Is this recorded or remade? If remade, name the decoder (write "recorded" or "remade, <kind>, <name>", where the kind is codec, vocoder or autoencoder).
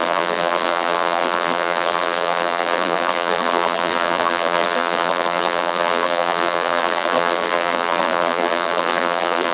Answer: remade, vocoder, BigVGAN v2